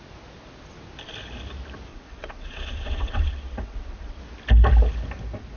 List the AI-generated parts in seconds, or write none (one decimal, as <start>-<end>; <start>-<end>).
1.9-4.2